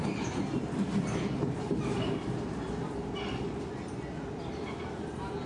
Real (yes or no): yes